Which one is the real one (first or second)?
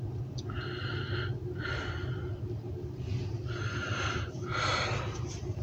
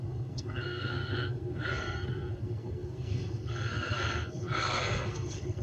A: first